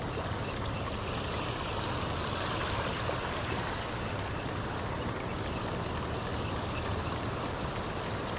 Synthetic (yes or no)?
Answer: no